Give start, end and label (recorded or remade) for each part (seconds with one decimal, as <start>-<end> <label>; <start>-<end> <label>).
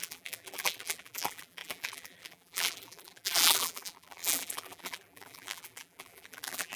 0.0-6.8 remade